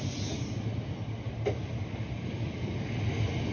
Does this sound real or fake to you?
real